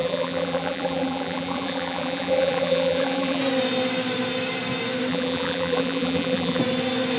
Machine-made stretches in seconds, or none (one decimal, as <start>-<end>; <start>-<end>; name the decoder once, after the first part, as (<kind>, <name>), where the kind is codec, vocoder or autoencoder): 0.0-3.4 (vocoder, BigVGAN v2); 5.1-6.6